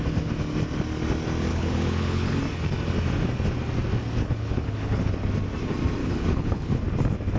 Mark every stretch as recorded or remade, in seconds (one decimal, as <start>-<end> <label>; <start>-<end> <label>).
0.0-1.5 recorded; 1.5-2.4 remade; 2.4-4.2 recorded; 4.2-5.1 remade; 5.1-6.0 recorded; 6.0-6.8 remade; 6.8-7.4 recorded